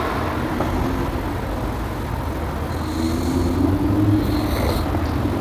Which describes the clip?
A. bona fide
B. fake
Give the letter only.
A